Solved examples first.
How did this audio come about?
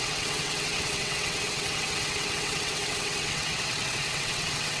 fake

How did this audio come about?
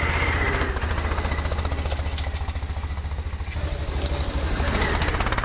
real